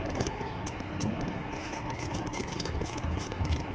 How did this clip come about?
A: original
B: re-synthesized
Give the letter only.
B